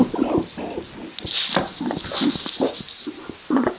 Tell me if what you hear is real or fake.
real